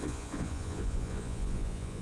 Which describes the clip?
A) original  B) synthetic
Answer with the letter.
B